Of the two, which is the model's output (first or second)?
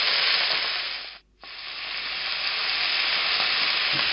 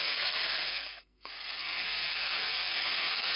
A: second